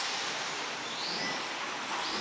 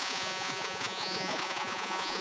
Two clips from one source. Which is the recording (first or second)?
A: first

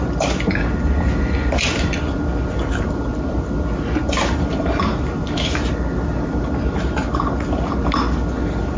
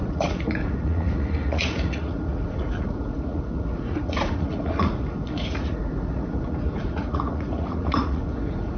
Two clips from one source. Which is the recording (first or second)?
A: first